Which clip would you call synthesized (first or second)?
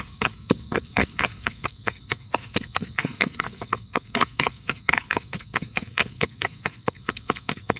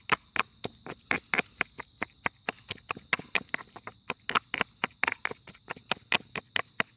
first